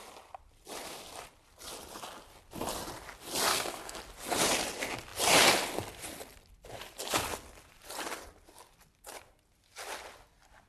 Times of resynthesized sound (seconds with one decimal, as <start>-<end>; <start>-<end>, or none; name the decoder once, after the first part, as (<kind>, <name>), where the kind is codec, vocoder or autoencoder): 3.5-4.0 (codec, SNAC)